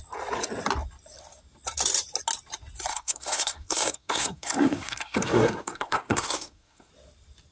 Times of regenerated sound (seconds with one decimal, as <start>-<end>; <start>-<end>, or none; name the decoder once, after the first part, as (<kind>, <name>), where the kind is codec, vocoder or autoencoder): 2.9-6.9 (codec, SNAC)